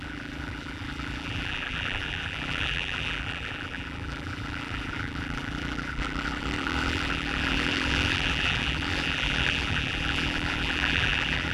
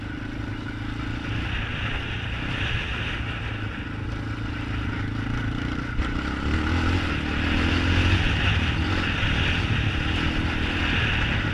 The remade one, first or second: first